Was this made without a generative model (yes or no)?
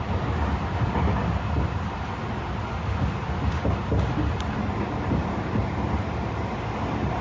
yes